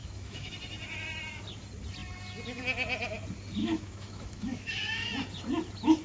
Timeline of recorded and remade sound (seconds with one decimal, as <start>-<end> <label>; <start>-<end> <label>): 0.0-0.5 remade; 0.5-3.6 recorded; 3.6-5.1 remade; 5.1-6.0 recorded